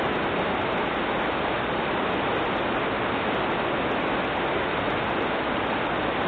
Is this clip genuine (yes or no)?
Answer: yes